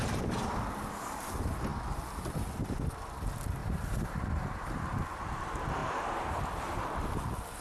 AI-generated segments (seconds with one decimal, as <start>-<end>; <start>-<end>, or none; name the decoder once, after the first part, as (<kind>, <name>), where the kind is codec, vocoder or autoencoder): 3.6-5.0 (vocoder, BigVGAN v2); 5.8-6.4